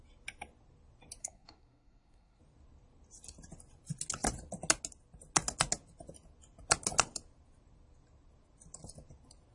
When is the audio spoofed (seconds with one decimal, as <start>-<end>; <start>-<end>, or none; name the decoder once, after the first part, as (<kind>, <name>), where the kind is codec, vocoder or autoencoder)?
1.2-2.4 (codec, SNAC)